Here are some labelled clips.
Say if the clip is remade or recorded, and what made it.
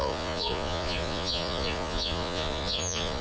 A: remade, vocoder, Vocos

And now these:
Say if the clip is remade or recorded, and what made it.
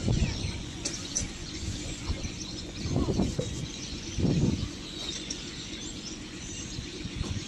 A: remade, vocoder, Vocos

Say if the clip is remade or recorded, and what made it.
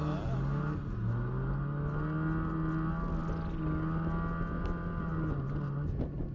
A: recorded